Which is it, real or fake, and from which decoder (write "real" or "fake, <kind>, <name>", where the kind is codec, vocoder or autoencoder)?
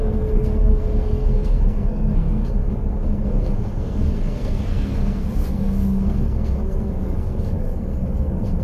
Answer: fake, codec, SNAC